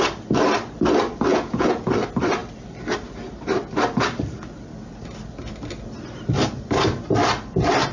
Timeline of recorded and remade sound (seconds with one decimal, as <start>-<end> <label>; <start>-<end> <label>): 0.0-1.3 recorded; 1.3-1.9 remade; 1.9-7.9 recorded